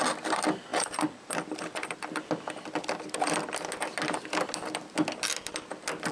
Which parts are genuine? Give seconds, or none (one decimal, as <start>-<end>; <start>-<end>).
0.0-6.1